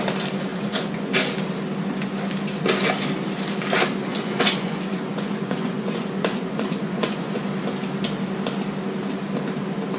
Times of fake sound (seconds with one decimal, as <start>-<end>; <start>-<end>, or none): 0.5-1.1; 4.1-7.4